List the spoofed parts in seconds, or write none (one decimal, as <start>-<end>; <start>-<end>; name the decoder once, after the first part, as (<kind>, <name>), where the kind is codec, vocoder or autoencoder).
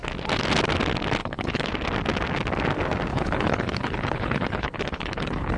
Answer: 1.2-1.7 (codec, HILCodec); 3.1-5.6